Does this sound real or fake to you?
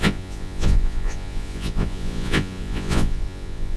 fake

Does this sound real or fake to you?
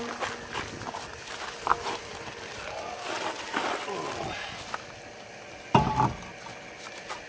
real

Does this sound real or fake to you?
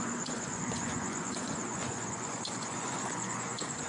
fake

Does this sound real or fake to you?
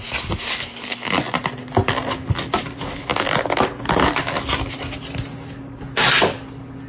real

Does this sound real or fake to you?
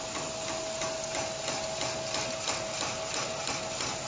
real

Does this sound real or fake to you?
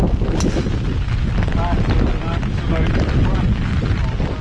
real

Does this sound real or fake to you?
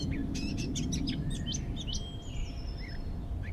real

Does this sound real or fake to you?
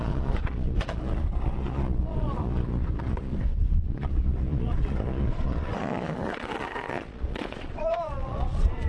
fake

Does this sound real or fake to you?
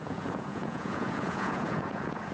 fake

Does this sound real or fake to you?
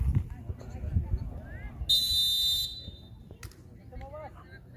real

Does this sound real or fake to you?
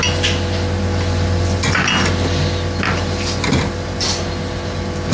real